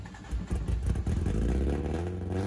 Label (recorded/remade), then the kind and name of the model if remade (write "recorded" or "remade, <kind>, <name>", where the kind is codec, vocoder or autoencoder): recorded